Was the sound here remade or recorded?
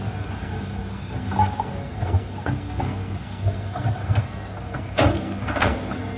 remade